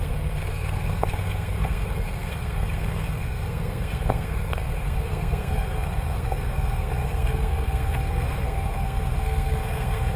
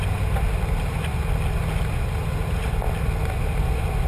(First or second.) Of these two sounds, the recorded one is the second